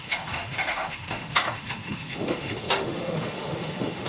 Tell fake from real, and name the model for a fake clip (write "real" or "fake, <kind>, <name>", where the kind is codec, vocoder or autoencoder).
fake, autoencoder, DAC-VAE